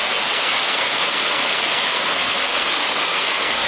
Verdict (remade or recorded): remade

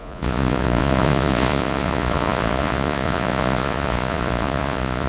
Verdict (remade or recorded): remade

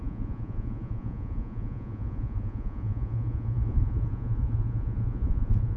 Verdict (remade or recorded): remade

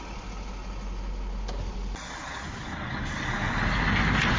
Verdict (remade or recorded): recorded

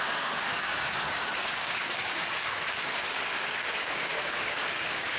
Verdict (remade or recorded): remade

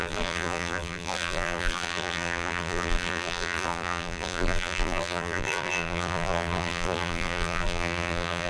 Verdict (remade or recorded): remade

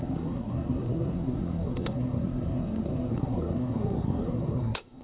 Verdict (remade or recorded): remade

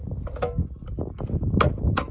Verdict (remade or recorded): recorded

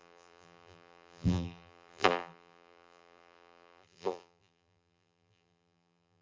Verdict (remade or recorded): remade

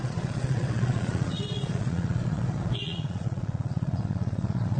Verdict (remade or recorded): remade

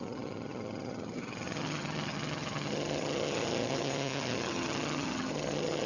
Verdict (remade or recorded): remade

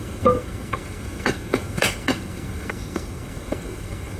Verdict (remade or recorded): remade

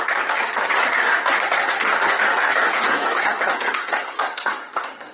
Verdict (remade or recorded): remade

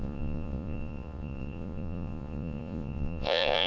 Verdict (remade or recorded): remade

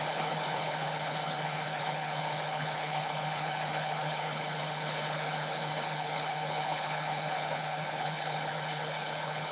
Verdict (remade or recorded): remade